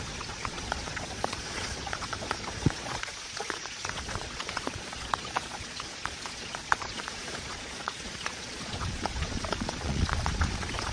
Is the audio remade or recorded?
remade